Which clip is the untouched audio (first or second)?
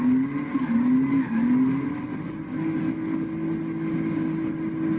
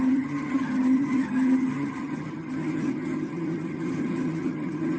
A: first